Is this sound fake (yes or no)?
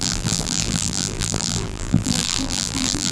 yes